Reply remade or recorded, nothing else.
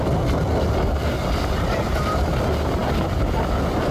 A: recorded